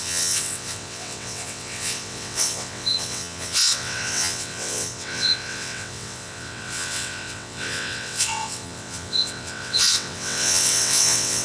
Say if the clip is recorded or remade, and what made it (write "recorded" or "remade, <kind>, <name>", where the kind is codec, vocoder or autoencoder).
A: remade, vocoder, WaveNeXt